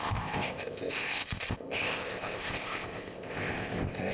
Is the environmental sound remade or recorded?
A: remade